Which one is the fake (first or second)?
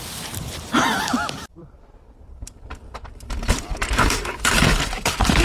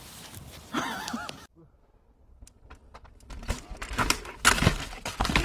first